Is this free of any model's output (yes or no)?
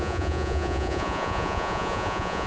no